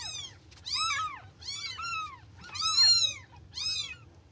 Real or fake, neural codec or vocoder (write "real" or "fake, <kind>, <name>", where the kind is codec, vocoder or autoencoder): real